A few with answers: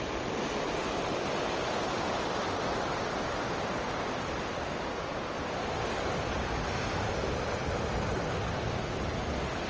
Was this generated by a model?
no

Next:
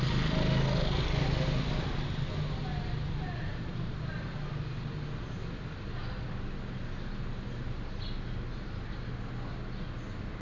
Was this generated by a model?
no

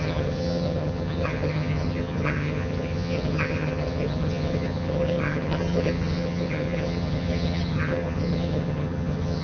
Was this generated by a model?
yes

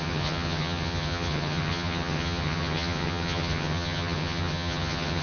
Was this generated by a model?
yes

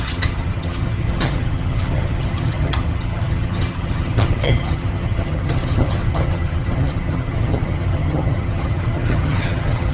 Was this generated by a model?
yes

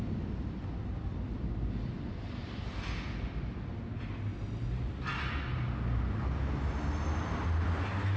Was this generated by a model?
no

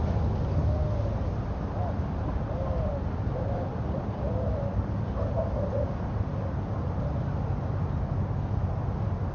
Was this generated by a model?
no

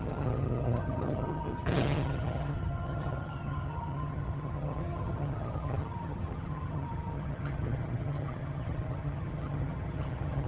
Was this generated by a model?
yes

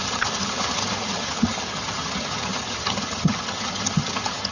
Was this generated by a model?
yes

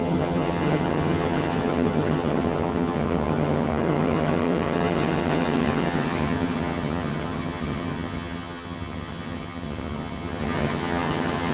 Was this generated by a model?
yes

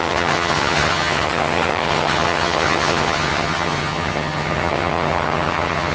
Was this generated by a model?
yes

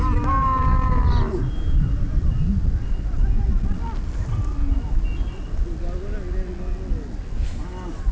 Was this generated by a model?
no